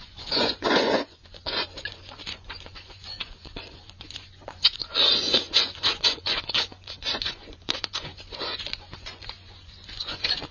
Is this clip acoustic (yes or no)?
no